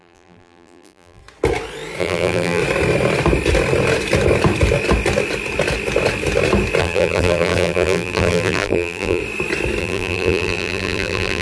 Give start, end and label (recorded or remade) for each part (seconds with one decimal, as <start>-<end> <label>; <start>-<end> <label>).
0.0-1.2 remade; 1.2-2.0 recorded; 2.0-2.6 remade; 2.6-6.8 recorded; 6.8-9.2 remade; 9.2-9.8 recorded; 9.8-11.4 remade

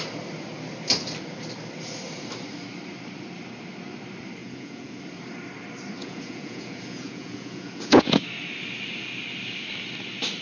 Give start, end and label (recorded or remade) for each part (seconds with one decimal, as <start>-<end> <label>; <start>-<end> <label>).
0.0-4.4 recorded; 4.4-5.0 remade; 5.0-6.0 recorded; 6.0-8.2 remade; 8.2-10.4 recorded

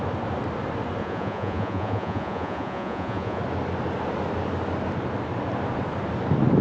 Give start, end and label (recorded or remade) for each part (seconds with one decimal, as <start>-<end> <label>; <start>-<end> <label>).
0.0-1.0 recorded; 1.0-3.4 remade; 3.4-6.6 recorded

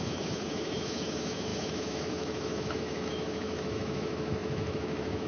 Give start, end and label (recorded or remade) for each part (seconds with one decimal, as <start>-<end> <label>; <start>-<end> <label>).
0.0-5.3 remade